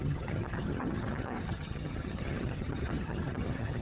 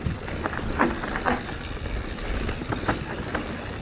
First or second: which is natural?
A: second